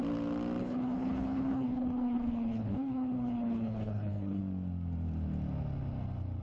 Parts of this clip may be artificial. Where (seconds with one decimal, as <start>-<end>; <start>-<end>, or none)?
0.6-4.4